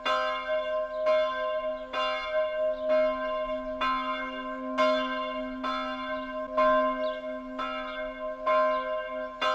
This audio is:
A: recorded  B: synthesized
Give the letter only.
A